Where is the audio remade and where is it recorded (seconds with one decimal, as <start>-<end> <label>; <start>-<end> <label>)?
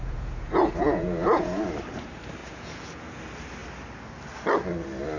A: 0.0-1.6 remade; 1.6-2.4 recorded; 2.4-3.2 remade; 3.2-5.2 recorded